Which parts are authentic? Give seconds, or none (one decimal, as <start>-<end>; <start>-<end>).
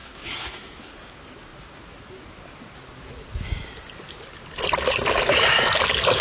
0.9-6.2